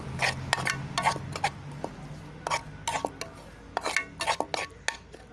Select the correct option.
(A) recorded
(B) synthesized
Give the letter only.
A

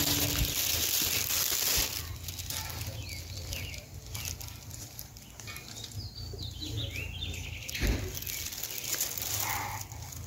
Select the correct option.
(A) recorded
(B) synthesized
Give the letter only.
A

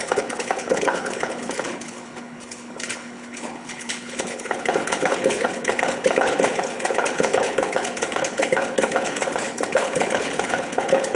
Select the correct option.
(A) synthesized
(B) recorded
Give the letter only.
A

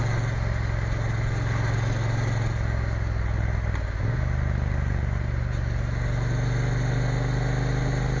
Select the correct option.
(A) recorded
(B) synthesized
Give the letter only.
A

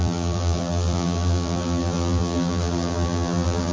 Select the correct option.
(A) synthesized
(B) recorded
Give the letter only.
A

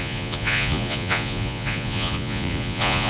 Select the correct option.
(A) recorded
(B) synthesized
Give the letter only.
B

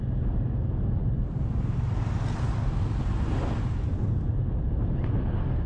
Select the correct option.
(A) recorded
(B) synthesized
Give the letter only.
A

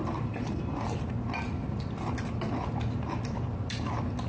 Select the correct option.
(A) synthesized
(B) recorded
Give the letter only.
B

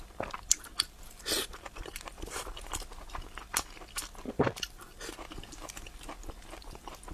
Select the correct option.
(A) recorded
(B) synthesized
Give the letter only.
A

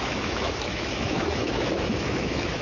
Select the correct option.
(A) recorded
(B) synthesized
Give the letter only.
B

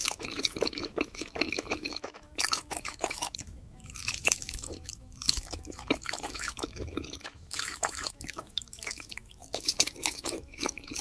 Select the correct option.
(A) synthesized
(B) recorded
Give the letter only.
A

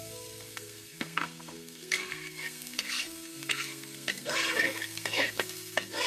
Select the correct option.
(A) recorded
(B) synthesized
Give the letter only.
B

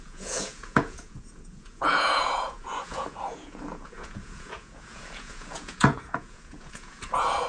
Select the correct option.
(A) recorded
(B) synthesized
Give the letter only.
B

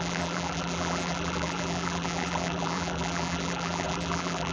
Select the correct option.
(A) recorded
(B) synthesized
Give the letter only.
B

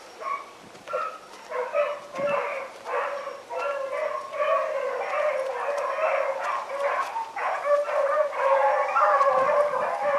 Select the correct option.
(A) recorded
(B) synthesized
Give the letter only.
A